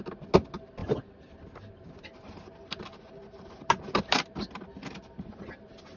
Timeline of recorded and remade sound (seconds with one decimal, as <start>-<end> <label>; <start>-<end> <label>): 0.0-6.0 recorded